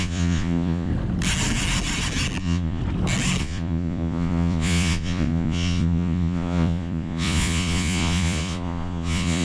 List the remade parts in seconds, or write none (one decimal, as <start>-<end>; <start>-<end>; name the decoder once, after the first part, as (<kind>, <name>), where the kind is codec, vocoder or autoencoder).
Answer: 0.0-0.9 (vocoder, Vocos); 2.4-2.8; 3.4-9.4